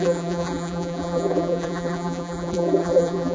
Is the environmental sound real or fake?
fake